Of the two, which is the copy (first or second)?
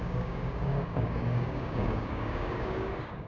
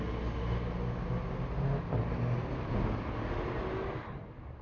first